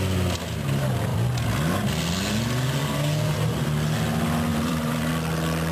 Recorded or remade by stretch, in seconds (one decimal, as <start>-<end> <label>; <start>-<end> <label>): 0.0-4.5 recorded; 4.5-5.1 remade; 5.1-5.7 recorded